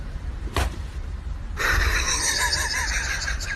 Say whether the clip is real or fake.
fake